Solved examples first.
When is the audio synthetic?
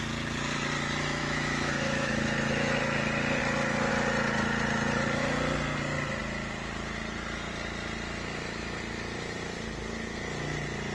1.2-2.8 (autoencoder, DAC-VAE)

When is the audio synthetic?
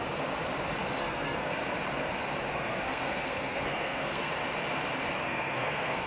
1.0-1.6 (codec, SNAC); 2.5-4.3; 5.2-6.1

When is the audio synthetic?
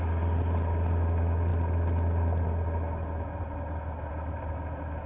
none